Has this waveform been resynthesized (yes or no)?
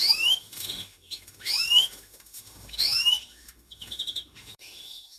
yes